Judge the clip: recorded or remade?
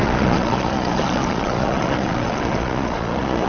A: remade